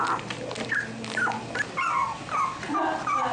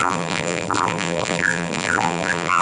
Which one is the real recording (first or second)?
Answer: first